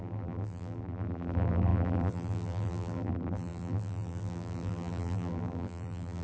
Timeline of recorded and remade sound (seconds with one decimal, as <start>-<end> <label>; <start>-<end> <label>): 0.0-6.2 remade